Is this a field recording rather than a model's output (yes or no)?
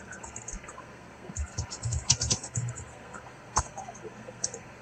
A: no